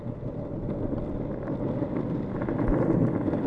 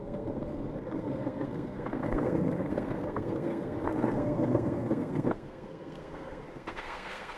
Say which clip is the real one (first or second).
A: first